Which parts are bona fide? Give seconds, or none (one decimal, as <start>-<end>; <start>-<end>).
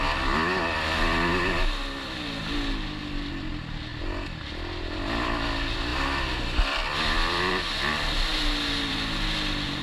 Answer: 0.0-9.8